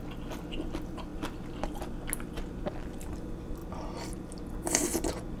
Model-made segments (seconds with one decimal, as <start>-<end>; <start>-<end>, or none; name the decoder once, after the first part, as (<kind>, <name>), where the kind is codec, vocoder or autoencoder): none

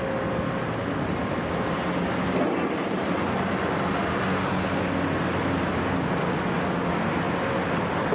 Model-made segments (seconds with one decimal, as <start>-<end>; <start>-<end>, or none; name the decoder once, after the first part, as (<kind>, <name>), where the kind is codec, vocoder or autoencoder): none

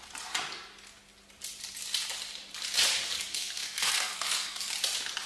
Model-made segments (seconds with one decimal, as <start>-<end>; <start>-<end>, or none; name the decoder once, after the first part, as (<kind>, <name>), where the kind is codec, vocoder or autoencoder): 3.3-4.7 (codec, SNAC)